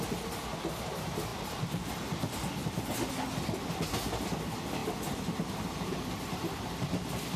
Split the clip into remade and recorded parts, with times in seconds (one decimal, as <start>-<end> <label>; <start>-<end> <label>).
0.0-1.3 recorded; 1.3-1.9 remade; 1.9-4.8 recorded; 4.8-6.7 remade; 6.7-7.4 recorded